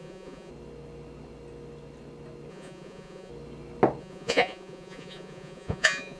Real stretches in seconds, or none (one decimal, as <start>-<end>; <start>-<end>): 0.5-2.5; 3.3-4.0